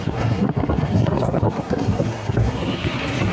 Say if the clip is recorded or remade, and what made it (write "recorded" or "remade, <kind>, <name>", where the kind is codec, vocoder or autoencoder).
remade, codec, SNAC